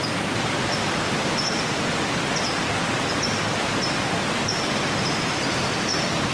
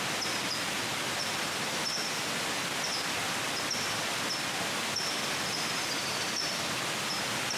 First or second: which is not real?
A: first